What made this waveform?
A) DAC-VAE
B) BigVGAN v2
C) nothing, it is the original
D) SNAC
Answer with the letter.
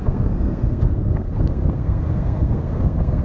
D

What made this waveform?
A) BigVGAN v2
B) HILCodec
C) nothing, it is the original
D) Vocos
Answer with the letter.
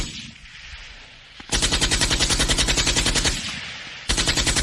D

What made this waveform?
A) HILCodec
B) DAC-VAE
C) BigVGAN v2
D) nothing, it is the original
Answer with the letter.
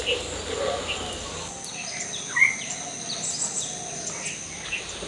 D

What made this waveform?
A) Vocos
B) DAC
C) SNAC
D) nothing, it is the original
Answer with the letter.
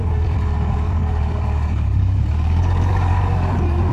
B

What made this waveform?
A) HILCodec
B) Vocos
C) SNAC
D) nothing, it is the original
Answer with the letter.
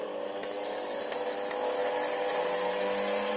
D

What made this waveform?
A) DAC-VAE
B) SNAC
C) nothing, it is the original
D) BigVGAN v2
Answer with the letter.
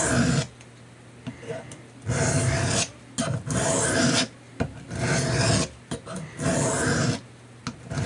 C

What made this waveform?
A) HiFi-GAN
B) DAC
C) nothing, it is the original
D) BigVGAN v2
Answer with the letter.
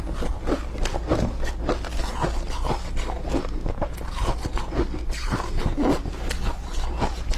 C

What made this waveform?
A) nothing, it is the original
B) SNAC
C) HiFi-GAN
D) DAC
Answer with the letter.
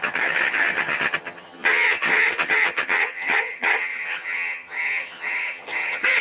C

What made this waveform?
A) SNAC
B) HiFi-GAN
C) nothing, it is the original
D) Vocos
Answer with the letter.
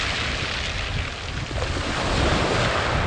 C